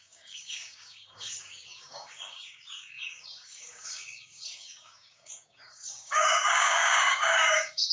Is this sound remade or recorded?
remade